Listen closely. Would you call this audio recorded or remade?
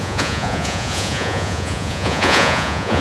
remade